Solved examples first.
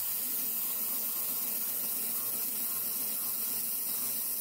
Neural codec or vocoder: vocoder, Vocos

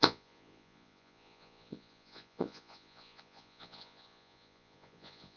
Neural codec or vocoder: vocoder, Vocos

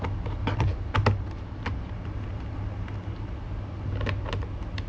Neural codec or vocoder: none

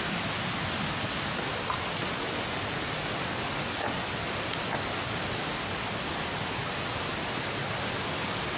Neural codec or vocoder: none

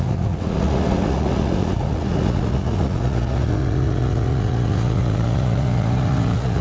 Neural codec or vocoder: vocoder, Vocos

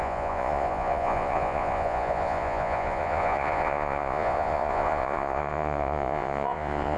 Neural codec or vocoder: vocoder, Vocos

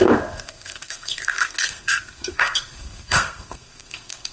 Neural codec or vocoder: codec, SNAC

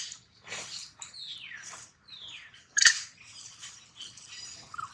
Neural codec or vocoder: vocoder, BigVGAN v2